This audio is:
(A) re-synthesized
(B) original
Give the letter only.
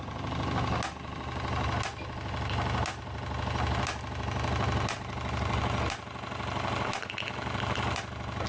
B